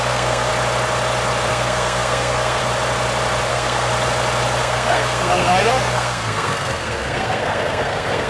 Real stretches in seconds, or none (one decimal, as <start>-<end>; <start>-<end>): 0.5-1.5; 2.6-3.5; 3.9-4.6